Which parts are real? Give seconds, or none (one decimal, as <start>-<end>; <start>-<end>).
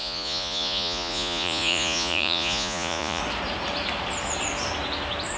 3.2-5.4